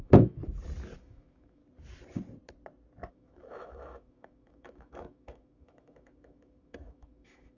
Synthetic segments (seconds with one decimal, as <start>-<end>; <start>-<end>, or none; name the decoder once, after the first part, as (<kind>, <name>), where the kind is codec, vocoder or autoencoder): 0.0-0.4 (autoencoder, DAC-VAE); 1.0-1.6; 3.1-7.6